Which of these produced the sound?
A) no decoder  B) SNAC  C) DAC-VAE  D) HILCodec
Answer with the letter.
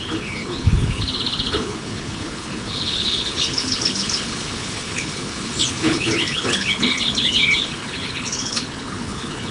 D